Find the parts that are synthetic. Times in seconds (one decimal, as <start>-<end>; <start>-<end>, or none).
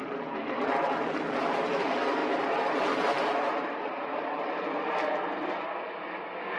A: none